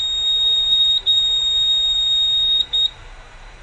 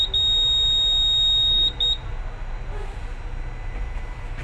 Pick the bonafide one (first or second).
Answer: second